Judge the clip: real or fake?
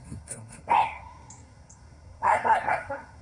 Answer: fake